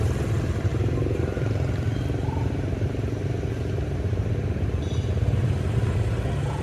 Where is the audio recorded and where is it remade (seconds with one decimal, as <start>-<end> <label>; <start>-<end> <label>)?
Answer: 0.0-6.6 recorded